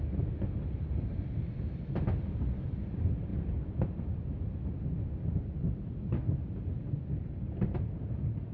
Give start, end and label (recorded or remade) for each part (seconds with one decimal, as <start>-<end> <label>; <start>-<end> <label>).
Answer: 0.0-8.5 recorded